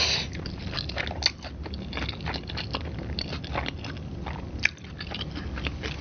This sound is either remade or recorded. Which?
recorded